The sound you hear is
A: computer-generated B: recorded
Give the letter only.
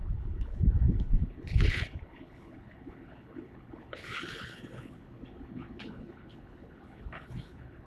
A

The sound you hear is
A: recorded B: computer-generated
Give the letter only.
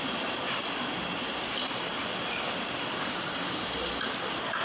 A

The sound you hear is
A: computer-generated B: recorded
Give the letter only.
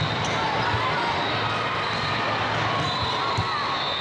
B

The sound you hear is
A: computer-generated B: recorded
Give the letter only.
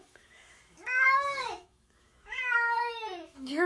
A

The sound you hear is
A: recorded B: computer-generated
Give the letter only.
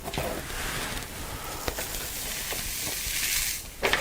A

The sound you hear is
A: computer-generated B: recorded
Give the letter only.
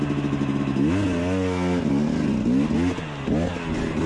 B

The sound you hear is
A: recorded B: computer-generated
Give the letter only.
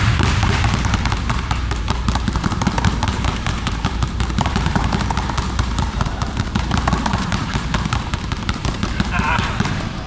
B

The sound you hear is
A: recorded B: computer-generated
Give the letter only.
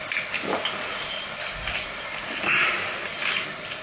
A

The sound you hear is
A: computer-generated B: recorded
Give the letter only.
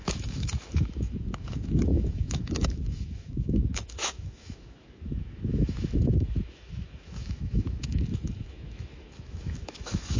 A